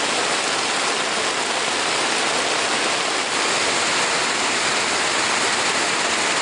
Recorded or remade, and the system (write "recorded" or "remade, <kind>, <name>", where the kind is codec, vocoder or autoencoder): recorded